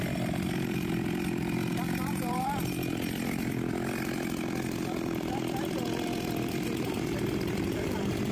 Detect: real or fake fake